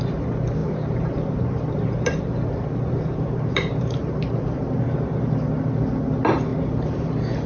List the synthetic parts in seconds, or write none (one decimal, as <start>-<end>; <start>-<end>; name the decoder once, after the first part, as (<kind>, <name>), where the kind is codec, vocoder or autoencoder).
0.6-4.8 (vocoder, BigVGAN v2); 6.5-7.1